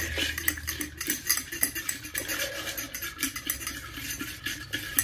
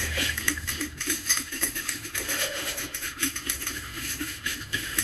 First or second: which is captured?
first